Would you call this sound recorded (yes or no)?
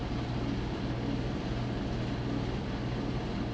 yes